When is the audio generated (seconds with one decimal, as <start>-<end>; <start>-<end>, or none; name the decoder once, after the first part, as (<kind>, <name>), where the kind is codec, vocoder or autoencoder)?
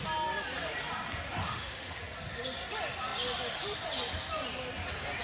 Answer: 1.4-2.0 (autoencoder, DAC-VAE)